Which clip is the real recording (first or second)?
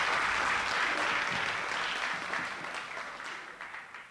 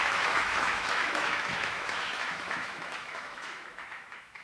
first